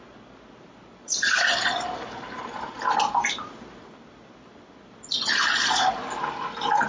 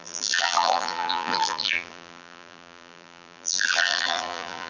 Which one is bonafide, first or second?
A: first